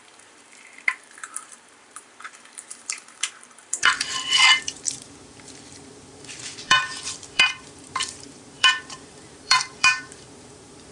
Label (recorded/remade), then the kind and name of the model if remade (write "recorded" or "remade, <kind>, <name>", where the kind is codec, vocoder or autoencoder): remade, vocoder, BigVGAN v2